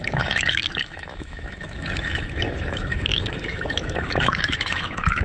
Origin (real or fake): fake